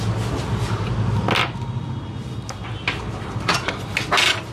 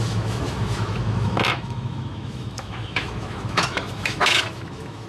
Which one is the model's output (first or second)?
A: second